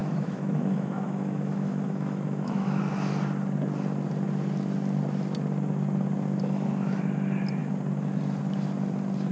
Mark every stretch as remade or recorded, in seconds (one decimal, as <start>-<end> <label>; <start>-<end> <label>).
0.0-2.8 remade; 2.8-9.3 recorded